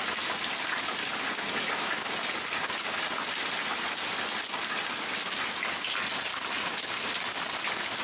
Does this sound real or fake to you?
real